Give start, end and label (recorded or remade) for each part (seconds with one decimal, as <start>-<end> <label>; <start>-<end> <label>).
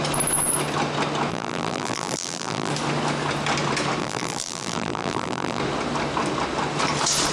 0.0-1.3 recorded; 1.3-2.7 remade; 2.7-4.0 recorded; 4.0-5.6 remade; 5.6-7.3 recorded